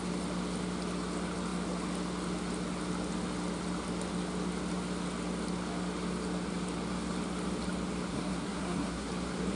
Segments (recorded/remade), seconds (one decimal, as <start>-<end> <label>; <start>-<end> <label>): 0.0-8.1 recorded; 8.1-9.1 remade; 9.1-9.6 recorded